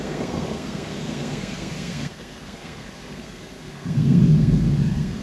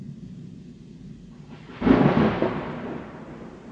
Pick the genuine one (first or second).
second